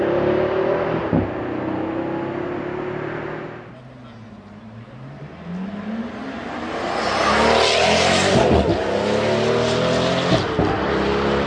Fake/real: real